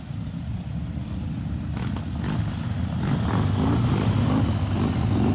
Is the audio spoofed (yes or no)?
no